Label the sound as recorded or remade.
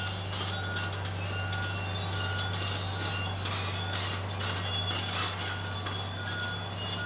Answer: recorded